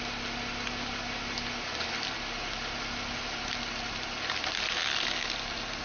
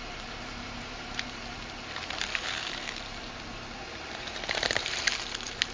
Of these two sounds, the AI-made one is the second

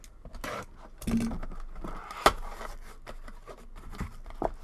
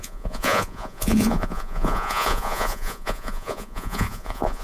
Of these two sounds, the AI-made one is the second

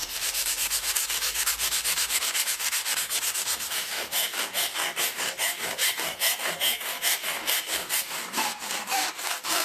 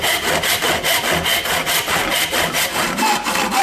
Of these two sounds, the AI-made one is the first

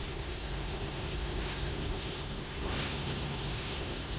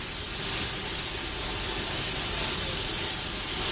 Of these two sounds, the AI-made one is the first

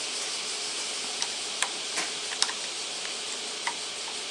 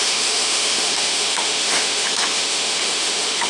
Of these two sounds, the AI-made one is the second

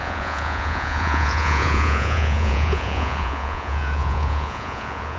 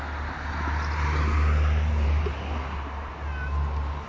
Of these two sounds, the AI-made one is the first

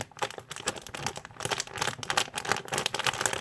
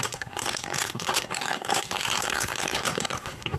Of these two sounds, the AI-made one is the second